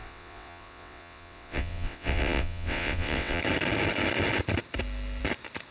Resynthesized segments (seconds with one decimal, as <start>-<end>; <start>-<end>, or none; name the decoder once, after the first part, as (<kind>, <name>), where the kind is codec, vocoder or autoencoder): 0.0-3.4 (vocoder, WaveNeXt)